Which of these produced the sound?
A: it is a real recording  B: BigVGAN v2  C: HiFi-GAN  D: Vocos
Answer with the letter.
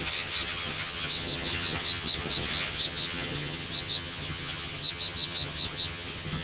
C